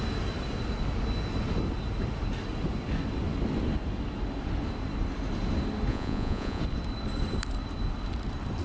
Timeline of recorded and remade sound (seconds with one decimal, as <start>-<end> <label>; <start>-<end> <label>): 0.0-5.9 recorded; 5.9-6.6 remade; 6.6-8.6 recorded